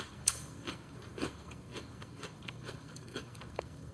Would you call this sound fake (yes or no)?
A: yes